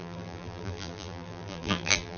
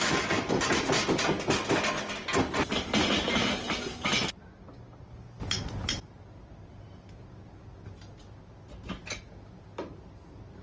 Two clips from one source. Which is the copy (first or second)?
first